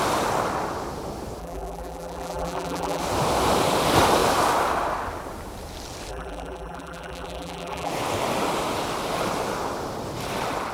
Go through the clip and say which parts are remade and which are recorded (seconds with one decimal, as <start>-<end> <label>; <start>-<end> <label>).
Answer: 0.0-1.4 recorded; 1.4-3.0 remade; 3.0-6.1 recorded; 6.1-7.9 remade; 7.9-10.7 recorded